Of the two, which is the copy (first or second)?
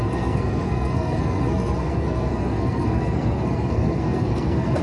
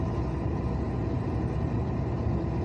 first